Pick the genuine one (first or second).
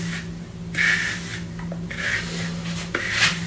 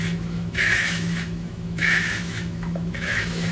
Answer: first